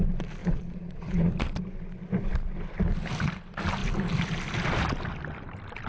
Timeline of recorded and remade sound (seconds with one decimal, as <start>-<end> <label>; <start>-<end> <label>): 0.0-0.4 recorded; 0.4-1.3 remade; 1.3-5.9 recorded